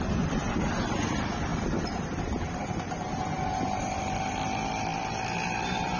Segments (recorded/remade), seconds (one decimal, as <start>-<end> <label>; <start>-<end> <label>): 0.0-6.0 recorded